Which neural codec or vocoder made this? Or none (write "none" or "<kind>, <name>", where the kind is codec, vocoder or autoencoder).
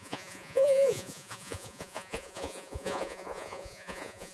vocoder, Vocos